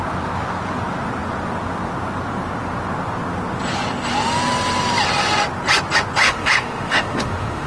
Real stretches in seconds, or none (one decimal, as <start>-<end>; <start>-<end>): 0.0-6.2